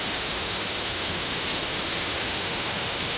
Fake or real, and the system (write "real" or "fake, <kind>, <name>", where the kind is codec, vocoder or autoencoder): fake, autoencoder, DAC-VAE